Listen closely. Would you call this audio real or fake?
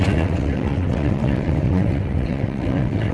fake